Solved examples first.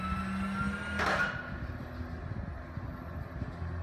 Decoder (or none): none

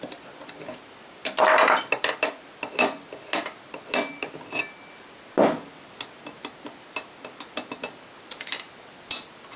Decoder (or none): none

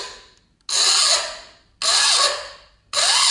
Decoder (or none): none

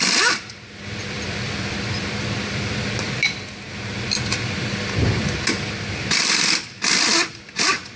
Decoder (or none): vocoder, BigVGAN v2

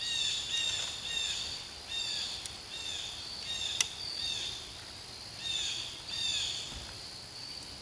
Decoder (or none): none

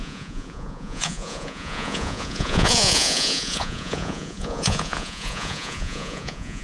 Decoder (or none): vocoder, Vocos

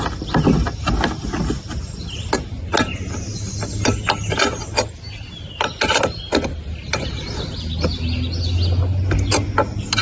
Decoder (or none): none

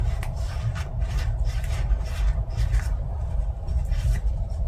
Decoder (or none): vocoder, BigVGAN v2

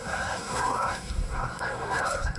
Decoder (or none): codec, SNAC